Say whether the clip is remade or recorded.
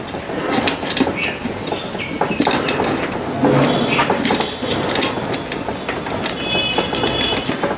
recorded